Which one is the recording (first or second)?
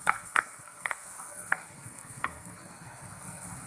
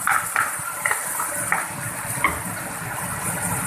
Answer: second